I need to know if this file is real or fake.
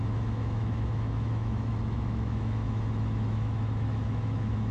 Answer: fake